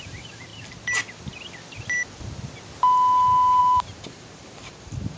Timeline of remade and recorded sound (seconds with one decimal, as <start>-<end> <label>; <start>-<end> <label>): 0.0-0.5 remade; 0.5-3.6 recorded; 3.6-5.2 remade